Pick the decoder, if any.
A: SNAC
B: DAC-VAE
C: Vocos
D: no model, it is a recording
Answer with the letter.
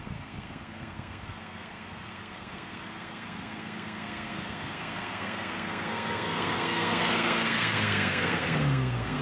A